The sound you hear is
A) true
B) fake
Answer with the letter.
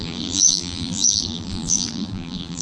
B